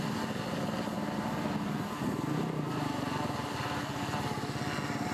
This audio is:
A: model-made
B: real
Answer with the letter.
B